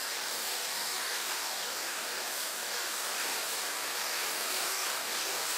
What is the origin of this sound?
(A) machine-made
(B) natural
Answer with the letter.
A